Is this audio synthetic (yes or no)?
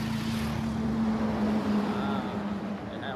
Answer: no